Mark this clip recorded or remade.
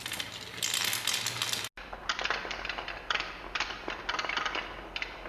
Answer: recorded